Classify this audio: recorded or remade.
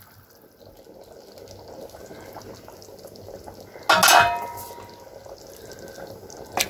recorded